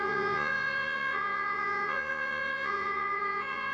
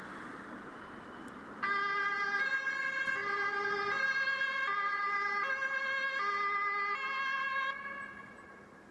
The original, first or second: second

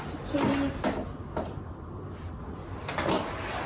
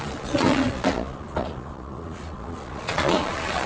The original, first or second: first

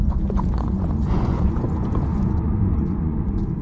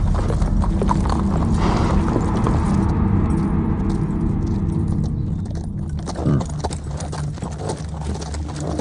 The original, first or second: second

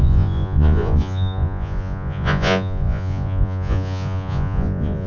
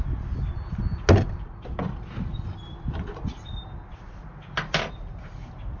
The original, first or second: second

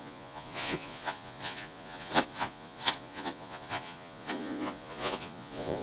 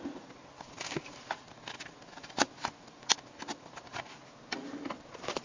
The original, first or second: second